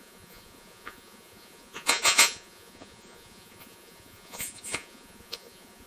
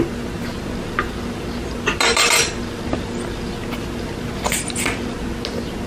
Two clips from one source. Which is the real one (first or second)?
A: second